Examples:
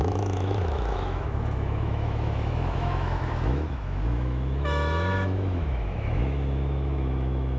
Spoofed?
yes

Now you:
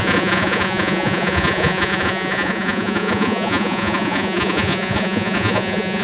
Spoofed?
yes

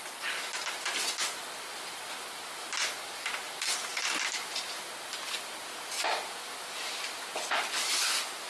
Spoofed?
no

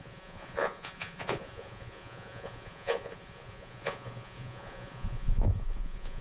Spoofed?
yes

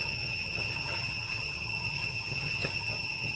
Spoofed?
yes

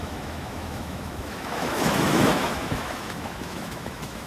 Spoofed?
yes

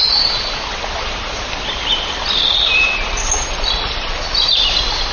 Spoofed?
no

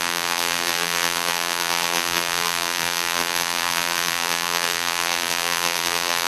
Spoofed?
yes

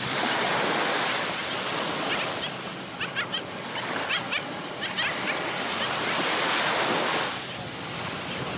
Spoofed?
no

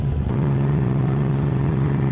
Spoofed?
yes